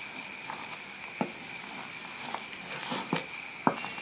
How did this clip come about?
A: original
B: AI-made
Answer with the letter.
A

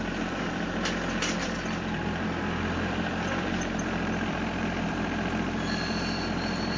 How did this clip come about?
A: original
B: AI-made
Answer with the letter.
B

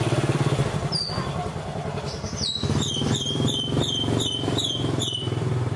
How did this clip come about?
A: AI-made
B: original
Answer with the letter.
A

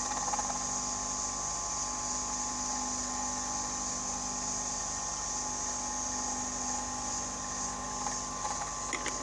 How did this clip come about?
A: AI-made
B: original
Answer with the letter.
B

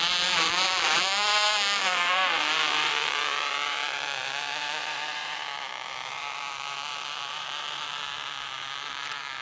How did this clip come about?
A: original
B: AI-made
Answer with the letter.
B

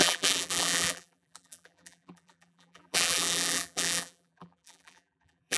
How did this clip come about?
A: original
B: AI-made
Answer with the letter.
B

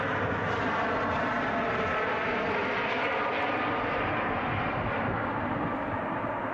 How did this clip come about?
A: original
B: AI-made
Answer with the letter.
A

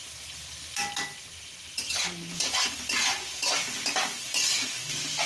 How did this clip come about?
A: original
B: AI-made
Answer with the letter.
A